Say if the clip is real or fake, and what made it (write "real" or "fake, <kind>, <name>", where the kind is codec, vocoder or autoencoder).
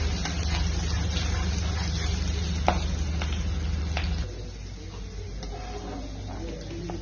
real